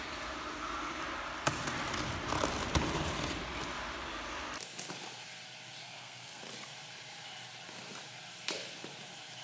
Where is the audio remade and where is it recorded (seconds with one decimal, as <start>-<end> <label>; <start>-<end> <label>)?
0.0-5.8 recorded; 5.8-6.4 remade; 6.4-9.4 recorded